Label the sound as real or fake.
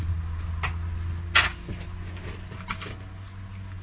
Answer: real